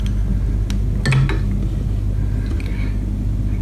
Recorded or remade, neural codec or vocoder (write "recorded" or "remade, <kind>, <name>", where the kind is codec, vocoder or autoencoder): recorded